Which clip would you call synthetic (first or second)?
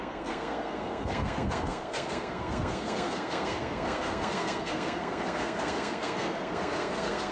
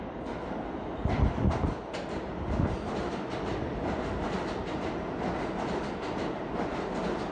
first